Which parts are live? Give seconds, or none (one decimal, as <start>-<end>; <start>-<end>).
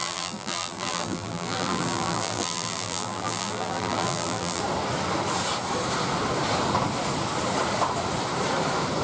4.6-9.0